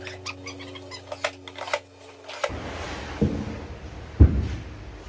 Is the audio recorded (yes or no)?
yes